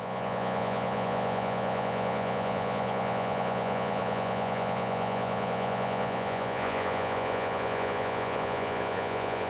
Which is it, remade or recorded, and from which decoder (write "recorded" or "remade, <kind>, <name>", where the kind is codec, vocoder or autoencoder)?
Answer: remade, vocoder, Vocos